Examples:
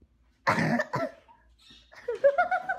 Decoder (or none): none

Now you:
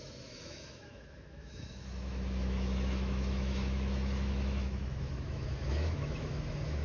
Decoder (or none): autoencoder, DAC-VAE